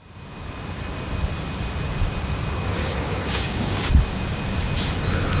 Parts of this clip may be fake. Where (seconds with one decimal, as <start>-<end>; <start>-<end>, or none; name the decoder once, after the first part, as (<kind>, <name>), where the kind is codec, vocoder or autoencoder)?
2.8-3.9 (codec, DAC)